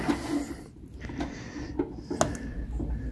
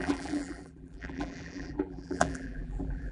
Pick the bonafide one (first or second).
first